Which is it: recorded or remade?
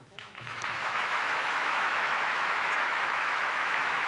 remade